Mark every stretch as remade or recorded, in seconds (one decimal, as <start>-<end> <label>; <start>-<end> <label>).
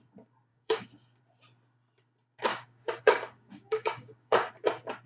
0.0-0.5 recorded; 0.5-1.2 remade; 1.2-2.5 recorded; 2.5-4.5 remade; 4.5-5.1 recorded